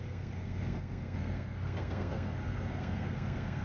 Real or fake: fake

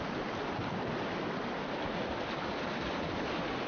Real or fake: real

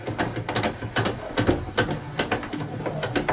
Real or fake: real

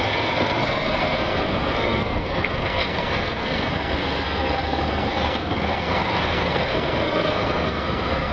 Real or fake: fake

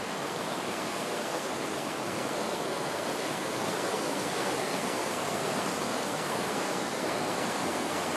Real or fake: fake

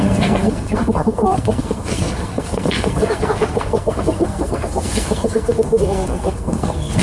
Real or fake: fake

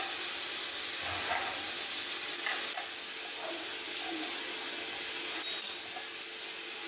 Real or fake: real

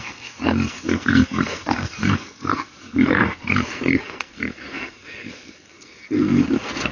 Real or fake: fake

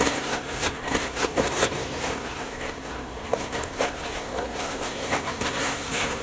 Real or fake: fake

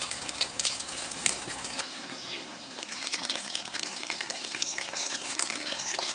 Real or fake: fake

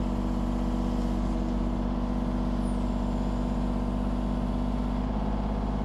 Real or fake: real